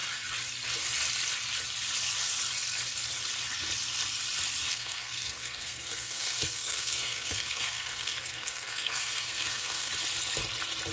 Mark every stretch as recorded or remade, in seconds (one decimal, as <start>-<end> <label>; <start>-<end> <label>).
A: 0.0-4.7 recorded; 4.7-9.9 remade; 9.9-10.9 recorded

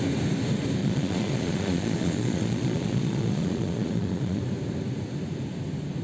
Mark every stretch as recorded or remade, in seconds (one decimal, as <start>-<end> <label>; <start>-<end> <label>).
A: 0.0-0.8 recorded; 0.8-4.4 remade; 4.4-6.0 recorded

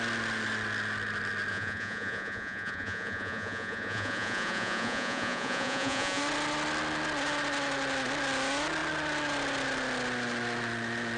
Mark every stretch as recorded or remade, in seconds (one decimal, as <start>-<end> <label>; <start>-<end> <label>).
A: 0.0-1.5 recorded; 1.5-6.2 remade; 6.2-11.2 recorded